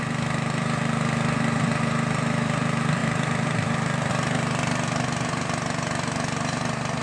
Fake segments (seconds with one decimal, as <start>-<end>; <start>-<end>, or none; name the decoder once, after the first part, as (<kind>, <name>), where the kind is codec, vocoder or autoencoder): 3.0-4.1 (vocoder, BigVGAN v2)